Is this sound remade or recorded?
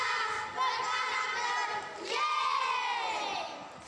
recorded